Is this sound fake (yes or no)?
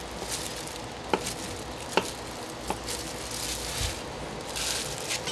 no